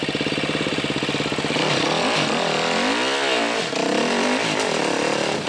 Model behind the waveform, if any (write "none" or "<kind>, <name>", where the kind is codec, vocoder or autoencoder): none